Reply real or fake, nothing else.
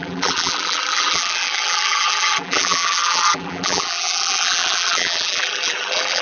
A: fake